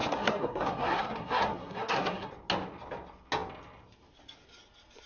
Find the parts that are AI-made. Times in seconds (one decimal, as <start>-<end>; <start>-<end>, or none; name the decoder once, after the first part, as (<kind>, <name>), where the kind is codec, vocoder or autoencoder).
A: 0.0-2.3 (codec, SNAC)